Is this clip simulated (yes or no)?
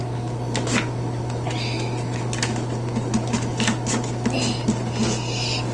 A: no